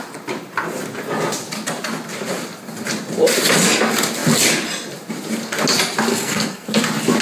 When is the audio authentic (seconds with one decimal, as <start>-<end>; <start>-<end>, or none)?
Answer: 0.0-6.1; 6.8-7.2